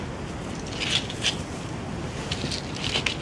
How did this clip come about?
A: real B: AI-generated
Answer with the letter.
A